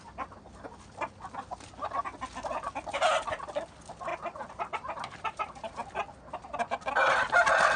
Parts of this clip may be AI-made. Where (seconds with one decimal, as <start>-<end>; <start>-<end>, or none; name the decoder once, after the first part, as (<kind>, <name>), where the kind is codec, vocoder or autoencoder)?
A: 4.1-5.7 (vocoder, BigVGAN v2)

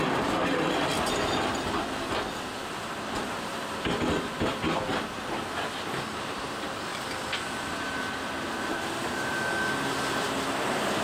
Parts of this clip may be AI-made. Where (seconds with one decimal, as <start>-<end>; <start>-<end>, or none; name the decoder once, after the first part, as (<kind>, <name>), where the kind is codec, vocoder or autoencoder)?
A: 2.6-5.1 (vocoder, BigVGAN v2); 6.9-8.2; 8.7-9.7

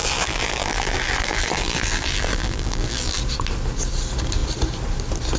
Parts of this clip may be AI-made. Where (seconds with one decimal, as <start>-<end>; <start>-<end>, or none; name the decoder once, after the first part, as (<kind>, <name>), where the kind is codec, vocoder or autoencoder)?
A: 0.0-3.2 (vocoder, BigVGAN v2)

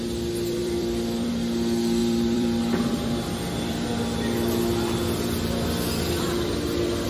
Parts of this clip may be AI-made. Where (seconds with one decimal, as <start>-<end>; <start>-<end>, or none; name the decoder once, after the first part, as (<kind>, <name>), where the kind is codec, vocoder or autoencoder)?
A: 0.6-1.3 (vocoder, BigVGAN v2); 2.0-2.6

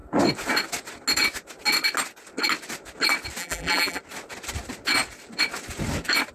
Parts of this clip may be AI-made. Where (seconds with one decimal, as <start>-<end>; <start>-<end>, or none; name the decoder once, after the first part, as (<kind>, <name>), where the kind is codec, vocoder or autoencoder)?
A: 3.4-4.0 (vocoder, BigVGAN v2)